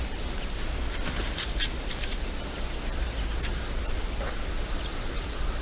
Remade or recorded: recorded